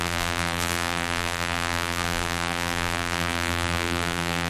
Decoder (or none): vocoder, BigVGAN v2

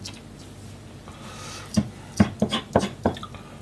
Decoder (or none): none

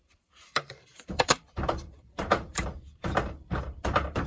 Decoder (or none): vocoder, BigVGAN v2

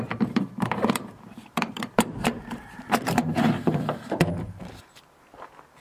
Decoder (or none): vocoder, BigVGAN v2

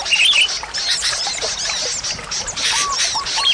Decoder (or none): none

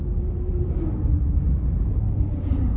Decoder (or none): vocoder, BigVGAN v2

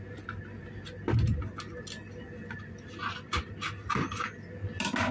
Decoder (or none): none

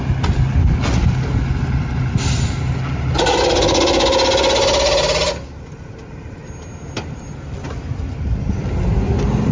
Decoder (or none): none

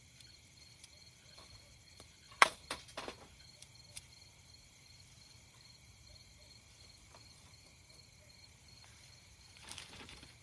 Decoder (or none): vocoder, BigVGAN v2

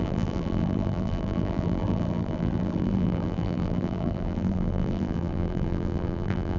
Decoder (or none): vocoder, BigVGAN v2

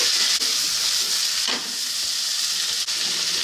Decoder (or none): none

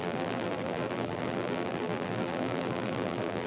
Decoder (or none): vocoder, BigVGAN v2